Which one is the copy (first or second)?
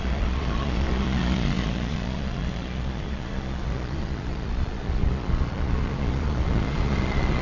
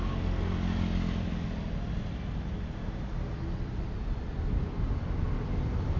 first